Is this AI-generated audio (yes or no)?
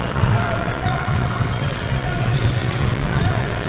yes